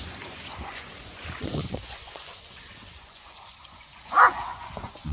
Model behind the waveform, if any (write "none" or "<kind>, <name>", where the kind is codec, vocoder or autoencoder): vocoder, Vocos